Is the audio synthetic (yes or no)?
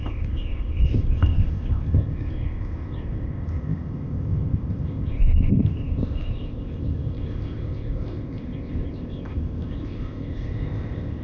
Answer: yes